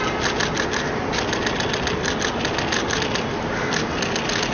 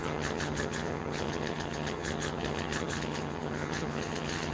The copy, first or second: second